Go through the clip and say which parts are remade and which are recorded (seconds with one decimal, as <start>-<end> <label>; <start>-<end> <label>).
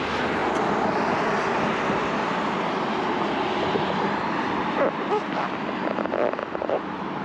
0.0-7.2 recorded